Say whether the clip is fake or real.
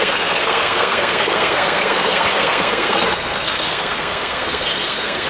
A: fake